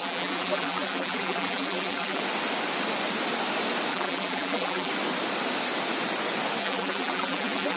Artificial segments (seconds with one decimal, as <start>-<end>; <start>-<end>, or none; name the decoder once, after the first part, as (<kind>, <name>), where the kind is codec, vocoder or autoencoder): 0.0-2.2 (vocoder, BigVGAN v2); 3.9-4.9; 6.6-7.8